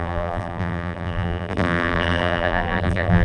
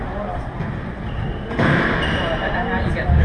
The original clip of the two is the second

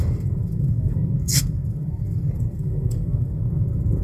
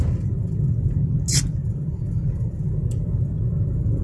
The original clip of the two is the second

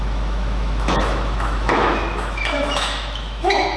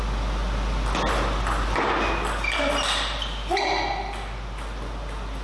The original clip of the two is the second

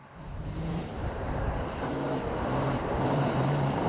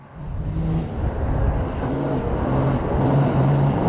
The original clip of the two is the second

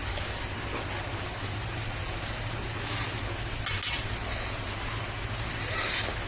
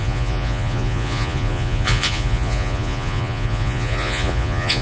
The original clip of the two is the first